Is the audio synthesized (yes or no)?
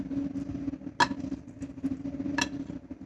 no